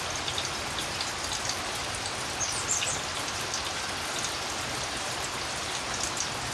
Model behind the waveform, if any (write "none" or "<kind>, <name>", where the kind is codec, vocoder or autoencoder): none